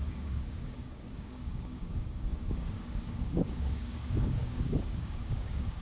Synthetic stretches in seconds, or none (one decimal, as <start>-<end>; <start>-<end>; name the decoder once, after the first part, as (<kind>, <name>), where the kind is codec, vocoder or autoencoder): 0.0-5.8 (codec, DAC)